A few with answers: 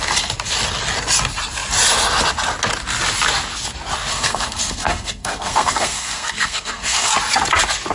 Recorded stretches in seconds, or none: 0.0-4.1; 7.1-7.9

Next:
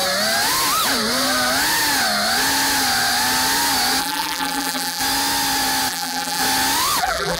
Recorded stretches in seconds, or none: 0.0-4.0; 5.0-5.9; 6.4-7.0

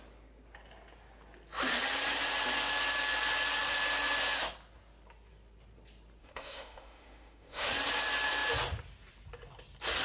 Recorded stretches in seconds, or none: 0.0-6.2; 7.7-10.0

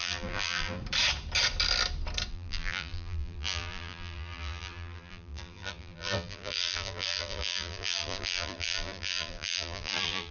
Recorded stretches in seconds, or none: 0.8-2.3